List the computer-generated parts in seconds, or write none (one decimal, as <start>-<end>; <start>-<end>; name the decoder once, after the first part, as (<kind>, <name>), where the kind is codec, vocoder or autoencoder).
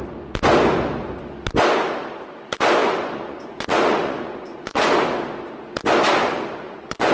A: 2.8-4.9 (vocoder, Vocos); 6.2-7.1